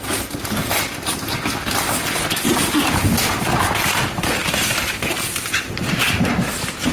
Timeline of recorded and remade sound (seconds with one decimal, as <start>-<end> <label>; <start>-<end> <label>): 0.0-6.9 recorded